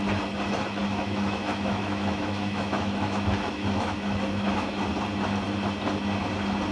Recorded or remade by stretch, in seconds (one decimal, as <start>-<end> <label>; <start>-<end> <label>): 0.0-0.8 recorded; 0.8-4.8 remade; 4.8-6.7 recorded